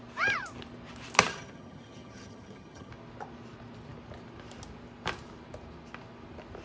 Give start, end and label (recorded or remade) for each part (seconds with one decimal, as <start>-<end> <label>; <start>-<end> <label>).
0.0-1.3 recorded; 1.3-2.9 remade; 2.9-6.6 recorded